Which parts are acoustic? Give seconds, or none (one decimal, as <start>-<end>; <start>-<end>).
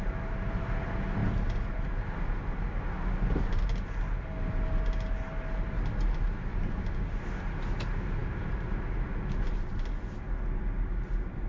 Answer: 0.0-11.5